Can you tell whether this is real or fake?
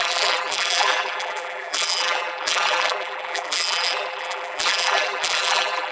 fake